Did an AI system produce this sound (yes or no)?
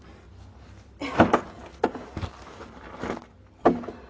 no